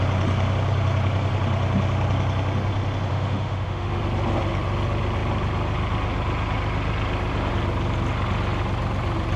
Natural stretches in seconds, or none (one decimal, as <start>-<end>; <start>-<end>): 0.0-3.1; 4.0-9.4